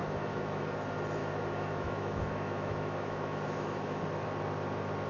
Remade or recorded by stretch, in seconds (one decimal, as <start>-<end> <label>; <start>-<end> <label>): 0.0-0.6 remade; 0.6-1.2 recorded; 1.2-4.0 remade; 4.0-5.1 recorded